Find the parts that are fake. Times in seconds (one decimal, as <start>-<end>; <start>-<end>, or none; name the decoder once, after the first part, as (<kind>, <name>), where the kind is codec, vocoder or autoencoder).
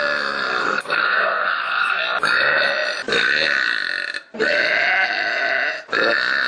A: 0.6-2.0 (codec, SNAC)